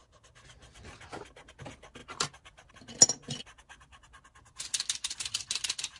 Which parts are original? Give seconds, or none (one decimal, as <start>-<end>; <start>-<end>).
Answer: 0.0-6.0

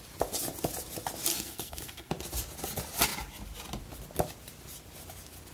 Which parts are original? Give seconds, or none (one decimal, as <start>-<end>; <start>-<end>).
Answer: 0.0-1.3; 2.1-5.5

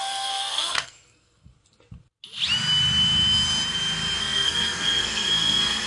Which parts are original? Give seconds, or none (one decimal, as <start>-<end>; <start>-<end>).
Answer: 1.5-4.2

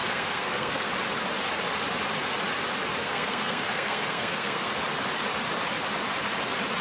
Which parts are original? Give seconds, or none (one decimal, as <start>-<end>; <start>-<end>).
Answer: 0.9-3.0; 4.7-6.8

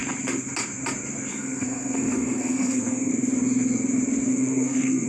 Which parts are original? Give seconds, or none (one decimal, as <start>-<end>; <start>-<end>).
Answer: 0.0-1.3; 3.1-4.3

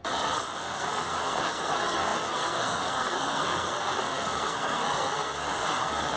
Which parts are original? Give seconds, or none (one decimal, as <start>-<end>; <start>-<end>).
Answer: none

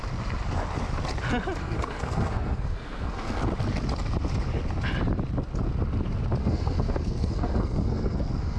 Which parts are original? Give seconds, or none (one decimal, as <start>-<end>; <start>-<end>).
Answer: 0.0-1.6; 3.4-6.4

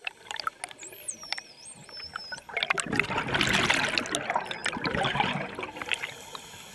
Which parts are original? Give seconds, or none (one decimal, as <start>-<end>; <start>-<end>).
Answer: 0.0-6.7